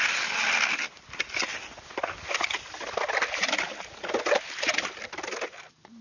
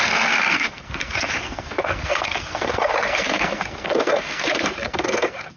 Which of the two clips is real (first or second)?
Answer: first